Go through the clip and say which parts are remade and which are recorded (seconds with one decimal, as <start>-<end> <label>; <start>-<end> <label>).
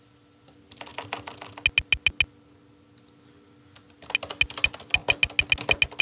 0.0-6.0 recorded